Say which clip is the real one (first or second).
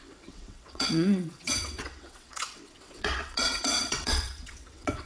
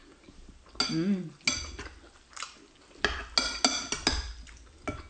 second